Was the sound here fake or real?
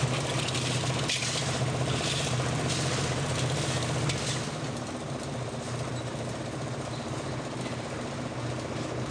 real